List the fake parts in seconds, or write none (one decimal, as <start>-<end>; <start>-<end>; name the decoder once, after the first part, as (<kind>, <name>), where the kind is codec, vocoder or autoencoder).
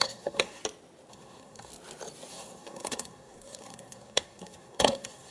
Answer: 0.0-0.6 (codec, SNAC); 1.1-1.7; 2.3-5.3